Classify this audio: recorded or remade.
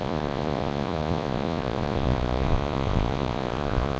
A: remade